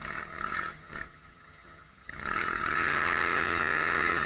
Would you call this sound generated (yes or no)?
yes